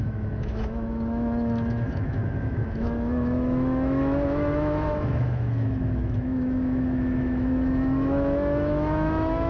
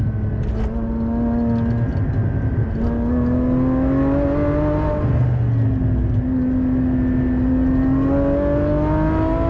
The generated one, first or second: first